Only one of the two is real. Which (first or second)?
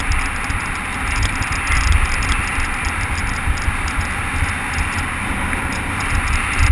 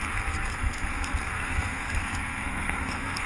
first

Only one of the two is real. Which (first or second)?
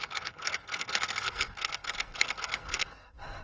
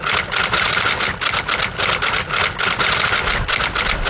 second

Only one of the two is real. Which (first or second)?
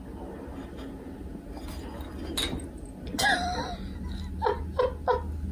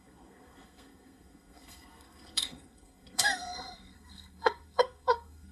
first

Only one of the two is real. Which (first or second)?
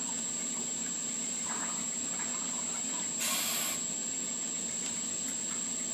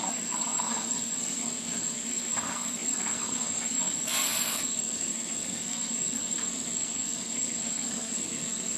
first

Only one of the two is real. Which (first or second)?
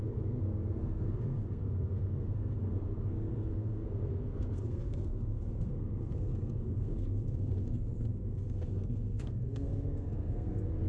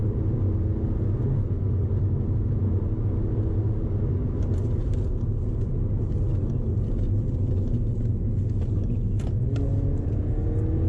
second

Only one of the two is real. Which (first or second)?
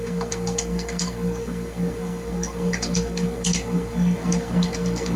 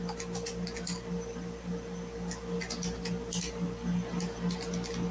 second